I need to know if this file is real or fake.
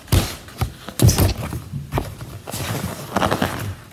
real